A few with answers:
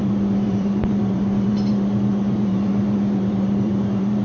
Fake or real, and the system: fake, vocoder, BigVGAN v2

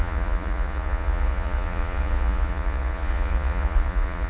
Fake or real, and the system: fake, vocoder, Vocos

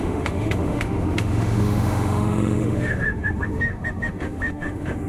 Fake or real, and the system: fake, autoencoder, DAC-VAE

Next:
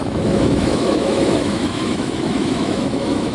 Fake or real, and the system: fake, autoencoder, DAC-VAE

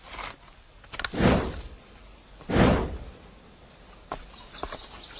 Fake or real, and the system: real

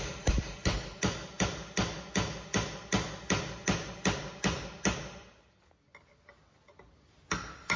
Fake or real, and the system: real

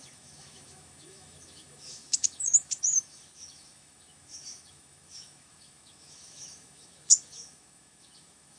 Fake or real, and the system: fake, autoencoder, DAC-VAE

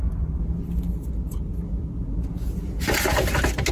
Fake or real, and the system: real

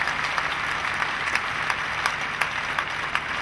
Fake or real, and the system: real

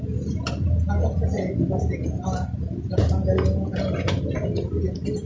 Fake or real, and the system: real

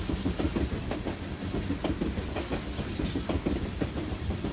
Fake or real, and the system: real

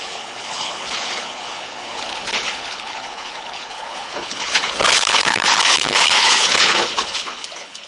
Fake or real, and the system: fake, codec, HILCodec